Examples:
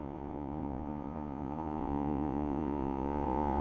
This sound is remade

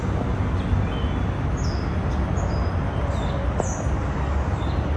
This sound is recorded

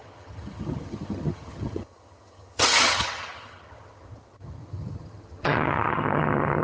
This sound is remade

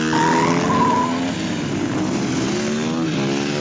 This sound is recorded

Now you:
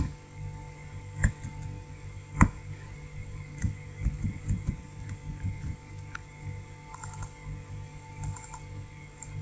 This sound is remade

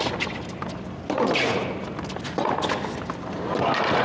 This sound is recorded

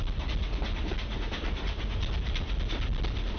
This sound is recorded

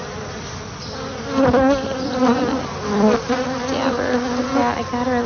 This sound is recorded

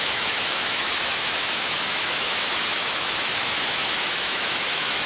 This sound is remade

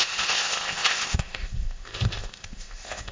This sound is remade